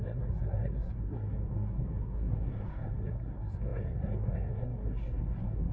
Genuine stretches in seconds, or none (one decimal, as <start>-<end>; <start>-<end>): none